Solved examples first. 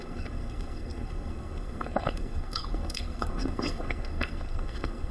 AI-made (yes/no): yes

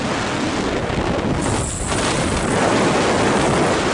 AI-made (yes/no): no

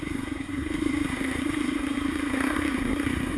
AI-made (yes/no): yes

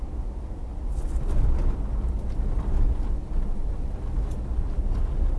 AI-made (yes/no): no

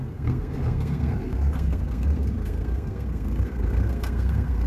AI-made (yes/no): yes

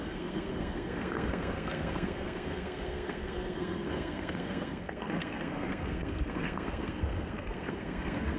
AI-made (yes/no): yes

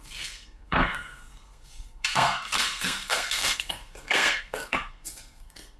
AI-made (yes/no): yes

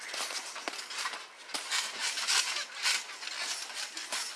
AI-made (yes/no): no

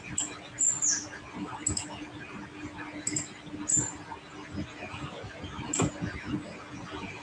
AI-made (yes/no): no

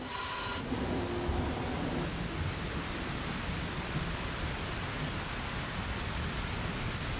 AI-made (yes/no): no